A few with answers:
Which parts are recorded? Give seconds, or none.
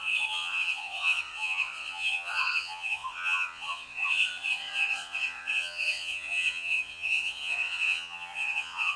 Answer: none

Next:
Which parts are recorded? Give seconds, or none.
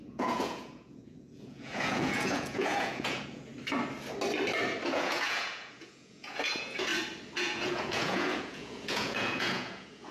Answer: 3.5-4.9; 6.9-7.4